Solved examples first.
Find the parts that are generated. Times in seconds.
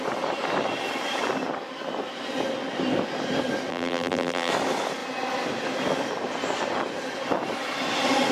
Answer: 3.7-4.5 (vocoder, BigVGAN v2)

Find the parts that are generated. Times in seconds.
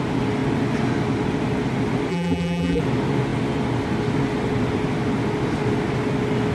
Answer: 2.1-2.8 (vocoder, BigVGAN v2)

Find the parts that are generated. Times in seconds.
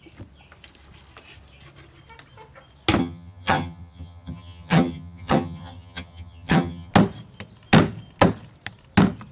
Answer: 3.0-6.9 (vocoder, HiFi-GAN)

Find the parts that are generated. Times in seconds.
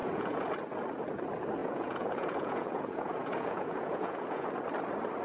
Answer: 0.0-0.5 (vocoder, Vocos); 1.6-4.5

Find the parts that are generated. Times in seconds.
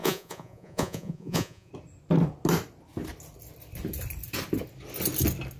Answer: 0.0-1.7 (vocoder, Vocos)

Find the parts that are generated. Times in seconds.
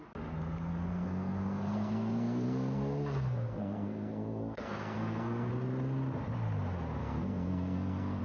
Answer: 0.7-5.5 (codec, SNAC); 7.0-8.2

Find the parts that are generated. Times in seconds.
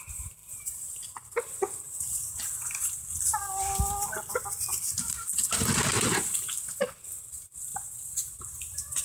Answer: 0.0-2.2 (vocoder, BigVGAN v2); 4.8-9.0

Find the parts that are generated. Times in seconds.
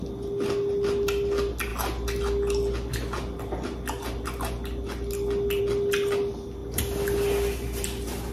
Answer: none